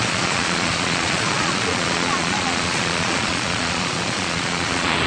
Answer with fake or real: fake